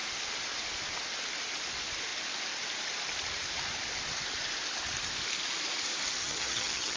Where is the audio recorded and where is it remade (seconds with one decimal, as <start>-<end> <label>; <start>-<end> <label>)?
0.0-6.2 recorded; 6.2-7.0 remade